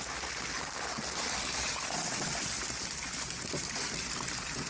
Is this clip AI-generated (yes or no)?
no